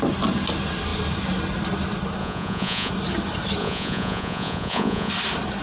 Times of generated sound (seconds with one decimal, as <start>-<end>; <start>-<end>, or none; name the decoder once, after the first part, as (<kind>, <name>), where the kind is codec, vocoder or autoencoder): 2.2-2.9 (vocoder, Vocos); 3.6-5.1